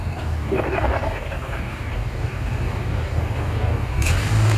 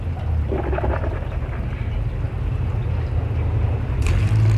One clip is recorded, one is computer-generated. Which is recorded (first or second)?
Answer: second